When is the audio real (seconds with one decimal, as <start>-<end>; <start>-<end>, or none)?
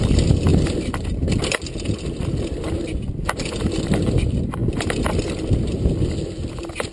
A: 0.0-6.9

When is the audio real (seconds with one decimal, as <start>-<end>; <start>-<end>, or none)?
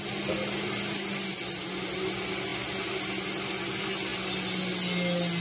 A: 0.0-5.4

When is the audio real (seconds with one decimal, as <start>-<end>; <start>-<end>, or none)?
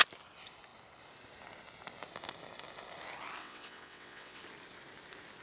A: 0.0-3.4; 4.4-5.4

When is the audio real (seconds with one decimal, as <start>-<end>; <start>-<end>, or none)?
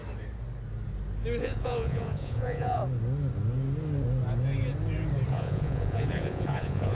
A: 0.0-1.4; 2.8-5.3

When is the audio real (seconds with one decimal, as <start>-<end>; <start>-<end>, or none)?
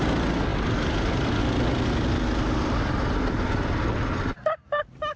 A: 0.0-5.2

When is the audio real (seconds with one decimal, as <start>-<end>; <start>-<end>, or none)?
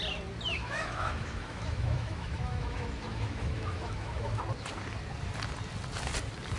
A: 0.0-0.5; 4.4-6.6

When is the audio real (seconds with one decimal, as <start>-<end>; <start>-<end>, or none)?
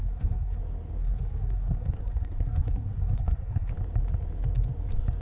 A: 0.6-1.0; 3.7-5.2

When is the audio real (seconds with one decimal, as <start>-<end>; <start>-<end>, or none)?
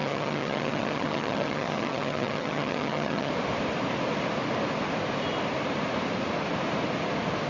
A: 3.3-7.5